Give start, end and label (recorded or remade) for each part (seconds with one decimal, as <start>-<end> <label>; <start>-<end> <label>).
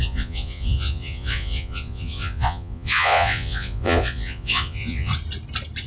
0.0-5.1 remade; 5.1-5.9 recorded